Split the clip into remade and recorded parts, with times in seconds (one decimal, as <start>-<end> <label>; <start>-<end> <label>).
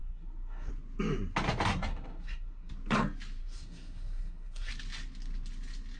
0.0-0.7 remade; 0.7-1.7 recorded; 1.7-2.7 remade; 2.7-3.4 recorded; 3.4-4.7 remade; 4.7-6.0 recorded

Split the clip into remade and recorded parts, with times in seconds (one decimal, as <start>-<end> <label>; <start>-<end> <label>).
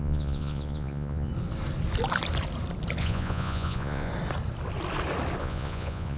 0.0-1.3 remade; 1.3-3.0 recorded; 3.0-4.1 remade; 4.1-5.4 recorded; 5.4-6.2 remade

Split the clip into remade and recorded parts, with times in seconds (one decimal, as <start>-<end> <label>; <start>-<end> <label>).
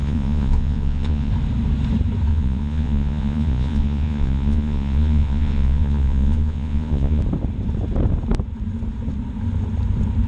0.0-1.3 remade; 1.3-2.3 recorded; 2.3-7.2 remade; 7.2-10.3 recorded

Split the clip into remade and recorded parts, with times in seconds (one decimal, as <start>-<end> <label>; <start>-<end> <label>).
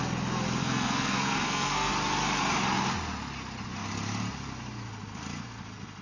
0.0-0.6 recorded; 0.6-1.9 remade; 1.9-6.0 recorded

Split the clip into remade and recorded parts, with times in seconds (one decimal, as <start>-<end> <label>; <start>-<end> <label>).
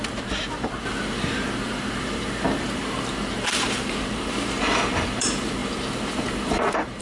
0.0-7.0 remade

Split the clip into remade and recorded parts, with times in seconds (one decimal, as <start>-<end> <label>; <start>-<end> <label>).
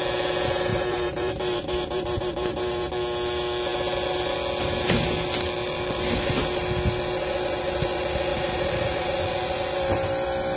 0.0-0.7 recorded; 0.7-2.9 remade; 2.9-8.3 recorded; 8.3-9.2 remade; 9.2-10.6 recorded